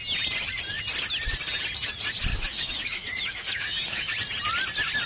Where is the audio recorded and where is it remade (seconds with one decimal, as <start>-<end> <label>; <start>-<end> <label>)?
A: 0.0-2.3 recorded; 2.3-4.1 remade; 4.1-5.1 recorded

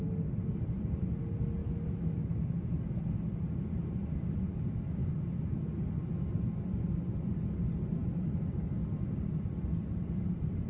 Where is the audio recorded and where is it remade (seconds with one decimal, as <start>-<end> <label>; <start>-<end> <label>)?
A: 0.0-1.6 recorded; 1.6-2.7 remade; 2.7-10.7 recorded

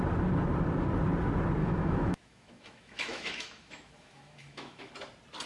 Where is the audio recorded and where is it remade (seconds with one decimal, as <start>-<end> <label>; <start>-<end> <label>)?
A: 0.0-1.6 recorded; 1.6-4.9 remade; 4.9-5.5 recorded

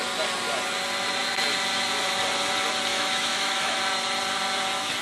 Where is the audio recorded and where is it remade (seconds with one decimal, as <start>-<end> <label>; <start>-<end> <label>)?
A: 0.0-2.9 recorded; 2.9-3.8 remade; 3.8-5.0 recorded

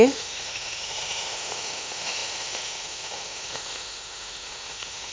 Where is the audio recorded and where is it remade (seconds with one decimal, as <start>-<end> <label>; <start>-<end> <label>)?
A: 0.0-5.1 remade